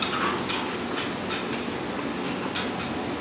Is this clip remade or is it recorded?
recorded